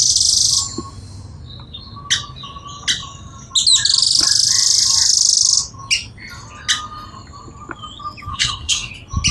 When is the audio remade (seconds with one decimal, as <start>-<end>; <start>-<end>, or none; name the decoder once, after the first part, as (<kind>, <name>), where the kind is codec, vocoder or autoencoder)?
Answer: 8.3-8.9 (codec, SNAC)